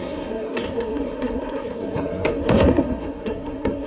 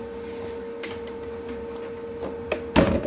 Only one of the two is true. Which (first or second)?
second